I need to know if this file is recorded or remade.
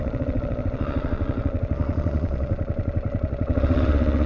remade